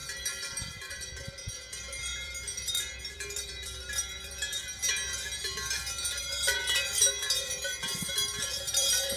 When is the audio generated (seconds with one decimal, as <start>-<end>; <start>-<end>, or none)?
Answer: 0.0-4.5; 6.2-9.2